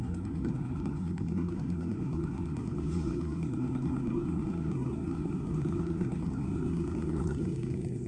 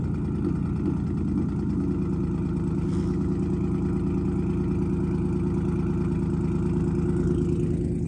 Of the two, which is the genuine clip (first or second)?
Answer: second